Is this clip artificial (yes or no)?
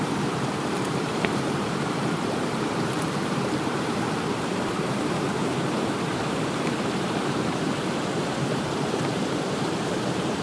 yes